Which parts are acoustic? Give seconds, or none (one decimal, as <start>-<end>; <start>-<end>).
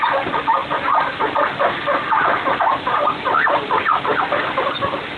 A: 0.0-5.2